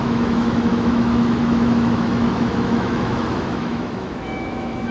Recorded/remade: remade